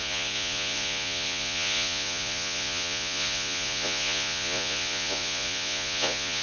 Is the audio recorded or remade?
remade